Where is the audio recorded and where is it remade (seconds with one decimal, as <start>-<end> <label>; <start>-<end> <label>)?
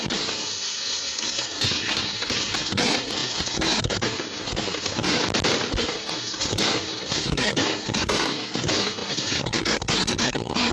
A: 0.0-5.2 remade; 5.2-5.7 recorded; 5.7-10.7 remade